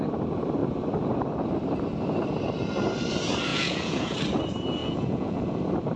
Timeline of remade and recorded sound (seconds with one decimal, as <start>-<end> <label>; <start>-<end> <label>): 0.0-3.5 recorded; 3.5-4.2 remade; 4.2-4.8 recorded; 4.8-5.4 remade; 5.4-6.0 recorded